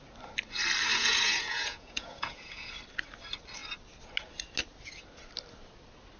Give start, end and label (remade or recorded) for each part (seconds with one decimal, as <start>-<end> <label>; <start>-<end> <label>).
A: 0.0-0.9 recorded; 0.9-2.7 remade; 2.7-6.2 recorded